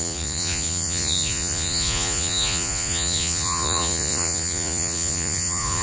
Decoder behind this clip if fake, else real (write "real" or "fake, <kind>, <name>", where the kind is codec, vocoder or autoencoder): fake, vocoder, Vocos